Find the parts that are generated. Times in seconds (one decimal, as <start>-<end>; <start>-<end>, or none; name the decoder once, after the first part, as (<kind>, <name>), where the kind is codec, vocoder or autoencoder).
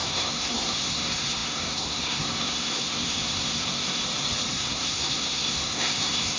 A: 0.0-4.0 (codec, SNAC); 4.5-6.4